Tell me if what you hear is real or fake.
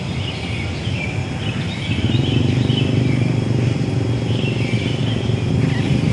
real